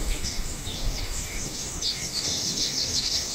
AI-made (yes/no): yes